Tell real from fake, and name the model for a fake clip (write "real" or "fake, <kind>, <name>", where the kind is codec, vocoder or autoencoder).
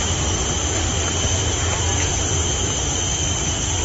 real